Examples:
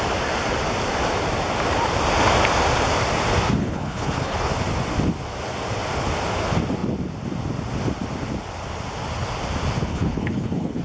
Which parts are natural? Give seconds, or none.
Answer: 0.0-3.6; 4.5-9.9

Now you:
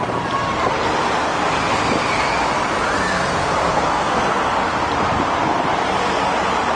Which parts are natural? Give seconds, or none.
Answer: 0.0-3.6; 4.2-6.7

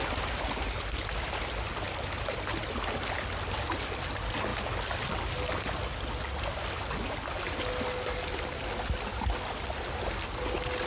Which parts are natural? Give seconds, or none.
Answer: 0.0-10.9

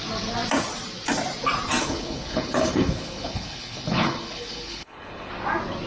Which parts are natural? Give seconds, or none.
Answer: 0.0-1.8; 5.3-5.9

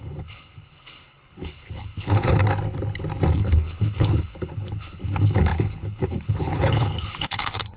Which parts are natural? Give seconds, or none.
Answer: 2.4-3.3

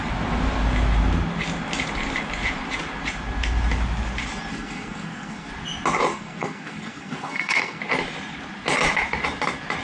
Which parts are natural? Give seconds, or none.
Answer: 0.0-4.5; 5.5-6.1; 7.8-9.8

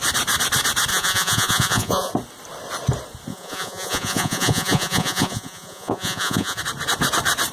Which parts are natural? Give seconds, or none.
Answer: 0.0-0.9; 2.1-3.3; 6.6-7.5